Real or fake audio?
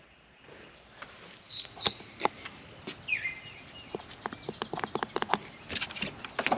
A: real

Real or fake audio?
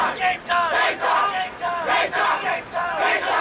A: real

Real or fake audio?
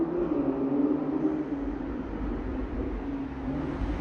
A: real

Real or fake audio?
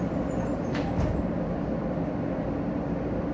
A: real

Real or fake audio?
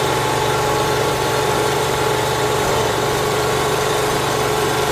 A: fake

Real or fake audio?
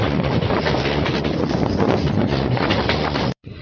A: fake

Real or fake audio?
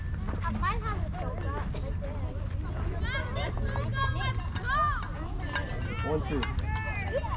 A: real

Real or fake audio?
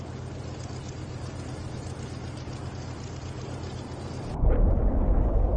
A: real